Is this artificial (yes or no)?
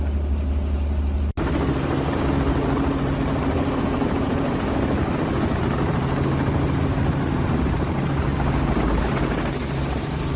no